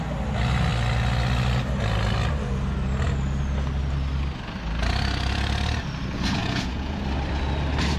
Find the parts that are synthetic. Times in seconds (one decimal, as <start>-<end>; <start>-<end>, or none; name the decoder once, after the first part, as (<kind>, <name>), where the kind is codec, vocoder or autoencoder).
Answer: 6.4-7.0 (vocoder, Vocos)